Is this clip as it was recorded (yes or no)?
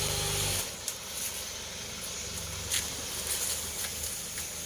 yes